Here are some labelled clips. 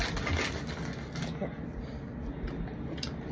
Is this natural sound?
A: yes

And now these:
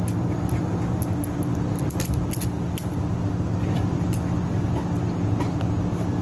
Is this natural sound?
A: yes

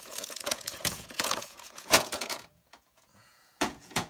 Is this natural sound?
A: no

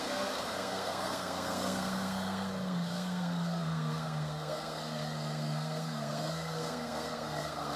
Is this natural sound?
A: no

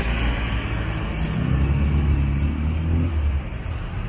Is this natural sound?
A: yes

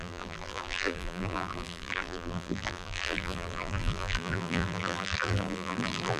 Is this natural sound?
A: no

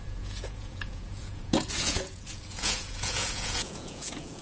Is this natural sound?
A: no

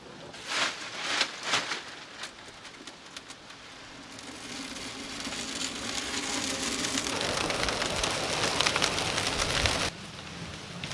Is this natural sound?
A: yes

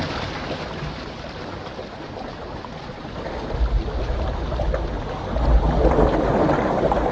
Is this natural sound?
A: yes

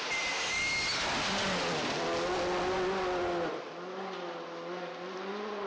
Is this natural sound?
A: yes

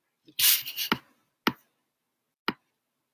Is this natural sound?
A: yes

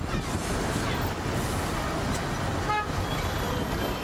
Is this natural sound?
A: yes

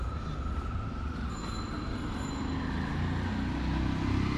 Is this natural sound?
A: yes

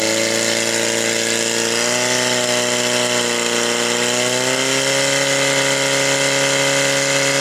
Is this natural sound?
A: yes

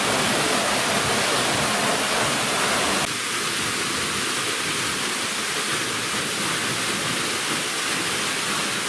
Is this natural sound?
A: yes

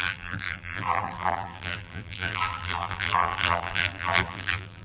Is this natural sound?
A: no